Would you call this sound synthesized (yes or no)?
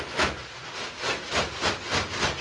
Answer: no